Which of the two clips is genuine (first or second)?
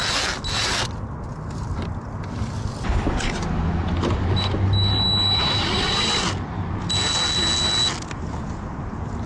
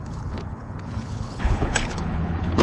first